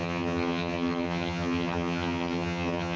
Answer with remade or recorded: remade